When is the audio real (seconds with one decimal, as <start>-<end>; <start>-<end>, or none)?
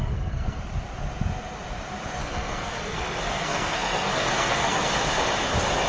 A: 0.6-2.2; 4.9-5.9